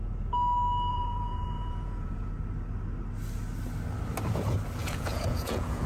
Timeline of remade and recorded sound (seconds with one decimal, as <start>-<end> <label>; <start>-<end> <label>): 0.0-0.9 recorded; 0.9-2.3 remade; 2.3-4.8 recorded; 4.8-5.9 remade